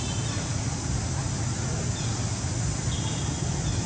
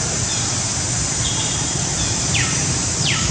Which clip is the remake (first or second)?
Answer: second